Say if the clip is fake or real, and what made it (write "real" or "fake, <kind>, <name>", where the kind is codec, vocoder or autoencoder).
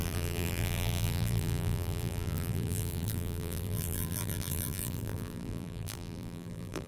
fake, vocoder, BigVGAN v2